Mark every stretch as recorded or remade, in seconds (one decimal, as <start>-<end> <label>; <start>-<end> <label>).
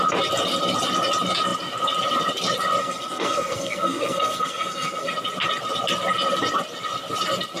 0.0-2.8 recorded; 2.8-5.1 remade; 5.1-7.6 recorded